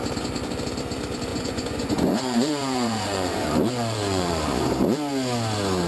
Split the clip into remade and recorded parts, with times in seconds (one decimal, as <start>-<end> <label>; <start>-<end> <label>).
0.0-1.3 recorded; 1.3-4.7 remade; 4.7-5.9 recorded